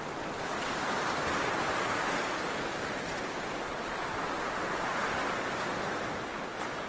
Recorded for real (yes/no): yes